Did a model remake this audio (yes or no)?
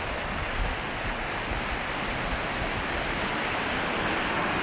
no